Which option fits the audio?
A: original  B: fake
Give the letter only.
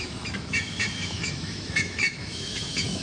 B